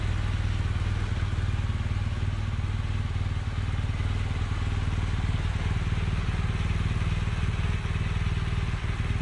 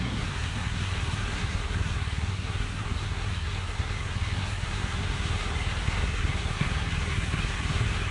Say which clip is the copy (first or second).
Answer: second